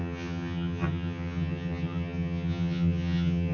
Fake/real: fake